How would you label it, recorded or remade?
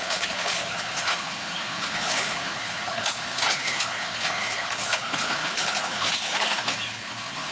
remade